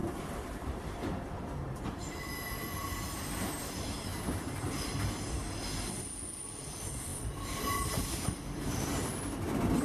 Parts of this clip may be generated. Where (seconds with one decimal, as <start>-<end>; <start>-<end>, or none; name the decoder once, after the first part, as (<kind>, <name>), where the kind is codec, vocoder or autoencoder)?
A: 0.0-1.1 (vocoder, BigVGAN v2); 4.1-5.3; 7.1-9.4